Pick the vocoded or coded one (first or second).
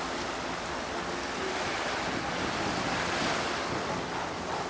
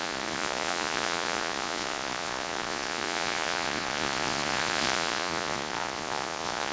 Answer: second